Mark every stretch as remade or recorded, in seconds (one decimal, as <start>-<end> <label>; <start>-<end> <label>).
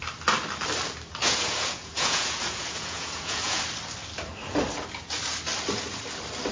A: 0.0-1.2 recorded; 1.2-3.6 remade; 3.6-6.5 recorded